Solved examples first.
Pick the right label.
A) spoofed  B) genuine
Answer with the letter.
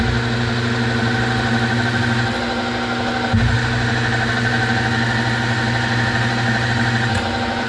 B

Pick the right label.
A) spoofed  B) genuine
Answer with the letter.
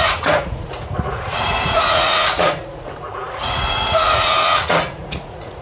A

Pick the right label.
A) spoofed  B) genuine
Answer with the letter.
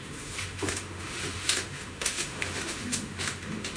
A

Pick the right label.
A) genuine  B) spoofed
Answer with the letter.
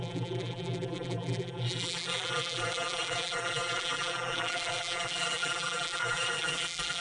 B